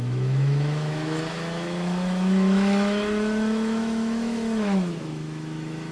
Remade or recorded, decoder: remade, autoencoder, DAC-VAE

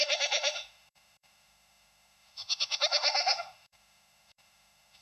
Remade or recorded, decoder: remade, autoencoder, DAC-VAE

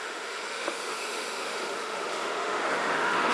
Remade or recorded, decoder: remade, autoencoder, DAC-VAE